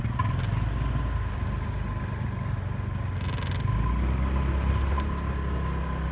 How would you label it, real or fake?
real